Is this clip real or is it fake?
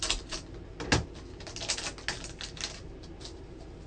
real